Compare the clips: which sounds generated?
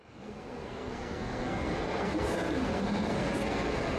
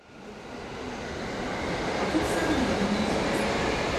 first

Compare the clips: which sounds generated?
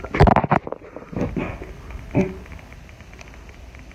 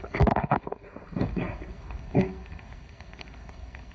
second